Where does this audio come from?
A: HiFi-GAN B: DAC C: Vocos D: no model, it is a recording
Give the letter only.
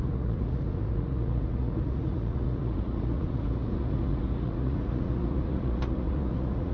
C